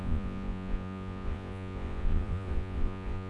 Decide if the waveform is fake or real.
fake